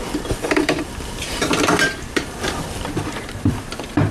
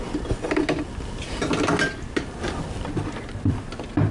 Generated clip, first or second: first